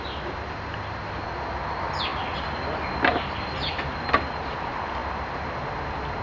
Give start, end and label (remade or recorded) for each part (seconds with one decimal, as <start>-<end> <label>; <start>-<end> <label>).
0.0-6.2 recorded

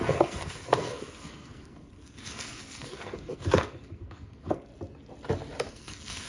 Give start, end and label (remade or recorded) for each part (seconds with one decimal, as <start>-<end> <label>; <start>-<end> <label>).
0.0-4.7 remade; 4.7-5.7 recorded; 5.7-6.3 remade

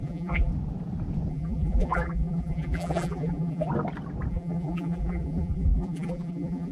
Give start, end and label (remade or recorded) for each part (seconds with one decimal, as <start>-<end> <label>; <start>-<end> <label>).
0.0-0.5 remade; 0.5-1.3 recorded; 1.3-3.7 remade; 3.7-4.3 recorded; 4.3-6.7 remade